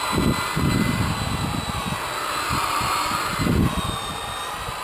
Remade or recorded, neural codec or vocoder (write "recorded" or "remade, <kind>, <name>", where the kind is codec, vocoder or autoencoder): recorded